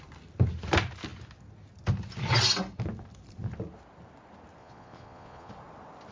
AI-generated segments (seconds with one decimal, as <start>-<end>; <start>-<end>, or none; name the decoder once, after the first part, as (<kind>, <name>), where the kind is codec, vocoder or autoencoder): 4.6-5.5 (vocoder, Vocos)